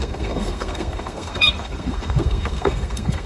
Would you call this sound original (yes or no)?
no